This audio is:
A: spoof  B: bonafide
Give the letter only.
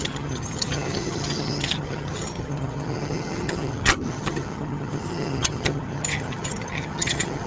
A